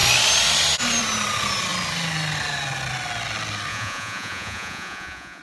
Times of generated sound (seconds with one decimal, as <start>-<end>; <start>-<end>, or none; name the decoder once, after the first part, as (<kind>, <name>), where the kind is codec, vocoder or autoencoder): 3.7-5.4 (vocoder, Vocos)